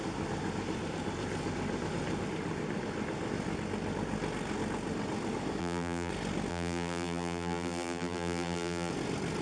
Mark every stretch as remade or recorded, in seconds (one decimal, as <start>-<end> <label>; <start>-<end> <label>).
0.0-5.6 recorded; 5.6-6.1 remade; 6.1-6.5 recorded; 6.5-8.9 remade; 8.9-9.4 recorded